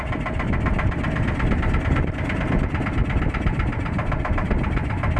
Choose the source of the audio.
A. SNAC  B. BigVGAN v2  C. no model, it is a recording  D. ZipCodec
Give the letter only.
C